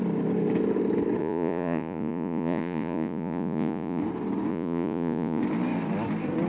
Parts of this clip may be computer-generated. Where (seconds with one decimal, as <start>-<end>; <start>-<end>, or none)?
1.2-4.0; 4.5-5.4